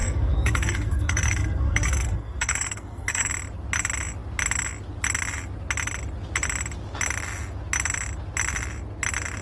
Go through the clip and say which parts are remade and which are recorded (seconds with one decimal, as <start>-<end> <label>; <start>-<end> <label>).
0.0-3.3 remade; 3.3-9.4 recorded